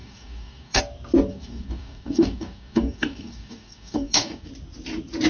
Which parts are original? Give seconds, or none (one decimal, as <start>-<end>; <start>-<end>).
0.8-1.3; 4.5-5.3